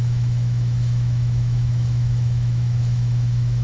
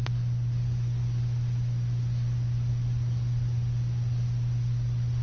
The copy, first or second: first